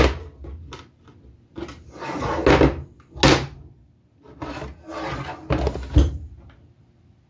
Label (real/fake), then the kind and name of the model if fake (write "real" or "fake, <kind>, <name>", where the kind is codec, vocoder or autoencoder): real